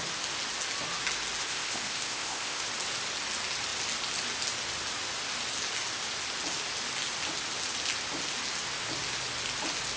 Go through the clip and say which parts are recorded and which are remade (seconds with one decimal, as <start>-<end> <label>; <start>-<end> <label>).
0.0-1.4 recorded; 1.4-2.6 remade; 2.6-10.0 recorded